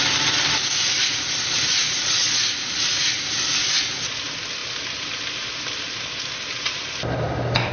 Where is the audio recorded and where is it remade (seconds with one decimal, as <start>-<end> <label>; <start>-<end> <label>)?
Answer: 0.0-7.7 recorded